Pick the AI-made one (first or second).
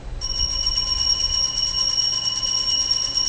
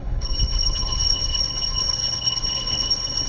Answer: second